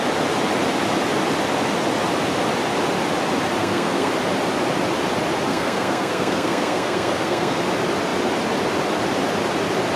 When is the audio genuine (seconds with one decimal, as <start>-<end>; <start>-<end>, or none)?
0.0-3.6; 4.1-5.5; 7.6-10.0